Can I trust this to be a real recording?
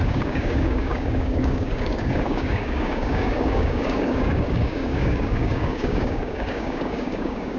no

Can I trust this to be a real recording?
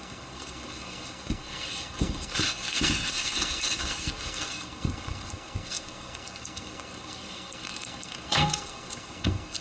no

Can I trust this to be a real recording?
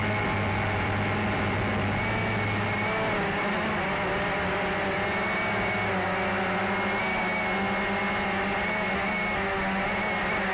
yes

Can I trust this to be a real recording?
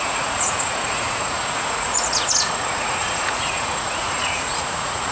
no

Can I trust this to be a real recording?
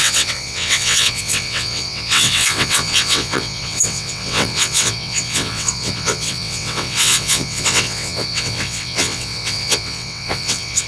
no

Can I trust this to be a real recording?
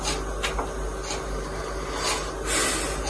yes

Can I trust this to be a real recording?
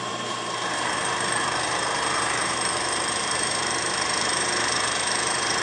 no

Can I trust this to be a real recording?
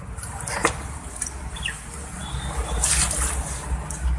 no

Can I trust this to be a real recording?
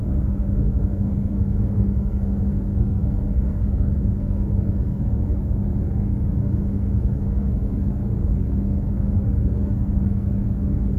no